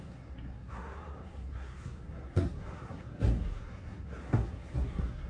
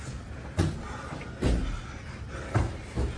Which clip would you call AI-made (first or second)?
first